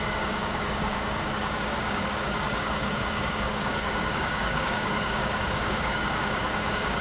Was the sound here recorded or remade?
remade